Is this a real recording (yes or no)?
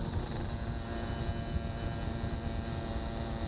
yes